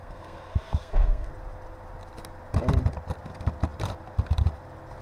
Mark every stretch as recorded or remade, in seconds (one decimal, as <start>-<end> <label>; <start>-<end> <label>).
0.0-1.3 remade; 1.3-5.0 recorded

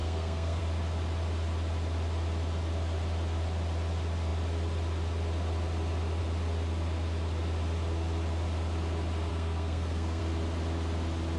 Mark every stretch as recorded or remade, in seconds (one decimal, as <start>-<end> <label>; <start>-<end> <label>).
0.0-0.6 remade; 0.6-9.3 recorded; 9.3-10.2 remade; 10.2-11.4 recorded

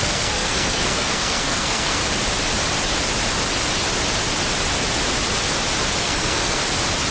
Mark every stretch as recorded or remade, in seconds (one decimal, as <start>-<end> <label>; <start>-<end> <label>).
0.0-2.0 remade; 2.0-6.0 recorded; 6.0-6.6 remade; 6.6-7.1 recorded

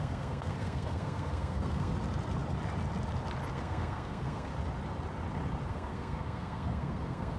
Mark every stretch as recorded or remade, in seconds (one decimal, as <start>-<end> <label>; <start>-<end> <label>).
0.0-1.9 remade; 1.9-3.5 recorded; 3.5-4.5 remade; 4.5-5.7 recorded; 5.7-7.4 remade